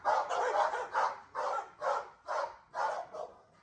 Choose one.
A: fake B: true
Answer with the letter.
B